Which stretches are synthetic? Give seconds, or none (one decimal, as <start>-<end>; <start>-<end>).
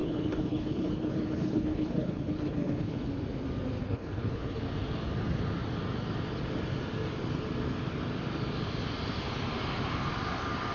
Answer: 0.0-3.1; 3.8-4.6